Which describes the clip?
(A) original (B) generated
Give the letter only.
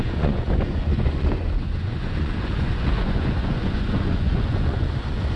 B